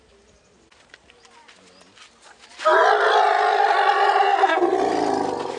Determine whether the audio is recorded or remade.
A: recorded